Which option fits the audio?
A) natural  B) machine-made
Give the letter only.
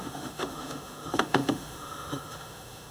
B